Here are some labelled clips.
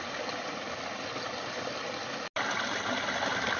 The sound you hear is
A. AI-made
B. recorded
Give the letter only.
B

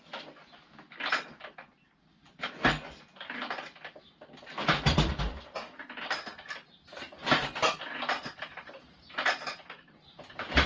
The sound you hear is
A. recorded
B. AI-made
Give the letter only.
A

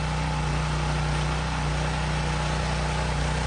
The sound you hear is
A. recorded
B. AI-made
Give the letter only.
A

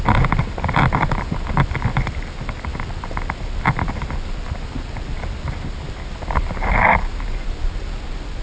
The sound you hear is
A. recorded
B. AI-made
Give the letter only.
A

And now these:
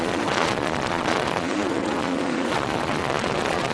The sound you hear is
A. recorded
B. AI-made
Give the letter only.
B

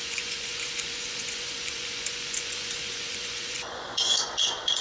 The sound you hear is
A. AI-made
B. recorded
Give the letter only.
A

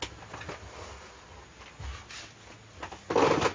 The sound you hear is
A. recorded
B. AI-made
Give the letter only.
A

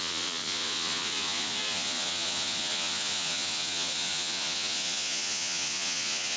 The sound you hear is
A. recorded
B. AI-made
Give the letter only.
B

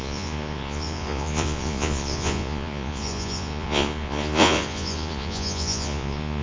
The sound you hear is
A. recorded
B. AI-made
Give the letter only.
B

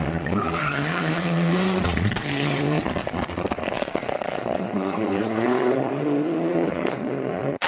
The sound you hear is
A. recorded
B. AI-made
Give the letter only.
B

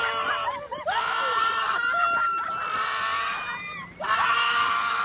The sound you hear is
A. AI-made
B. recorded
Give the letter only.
B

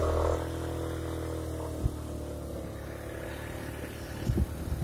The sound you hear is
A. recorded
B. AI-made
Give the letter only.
A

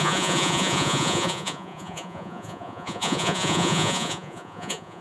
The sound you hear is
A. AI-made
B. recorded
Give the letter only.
A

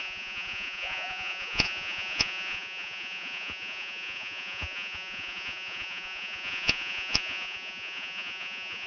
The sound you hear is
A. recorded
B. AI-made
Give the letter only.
B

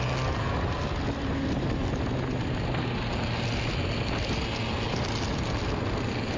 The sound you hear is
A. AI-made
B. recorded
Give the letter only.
B